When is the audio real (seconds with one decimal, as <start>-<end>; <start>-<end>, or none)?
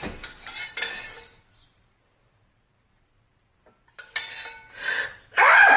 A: 0.0-5.8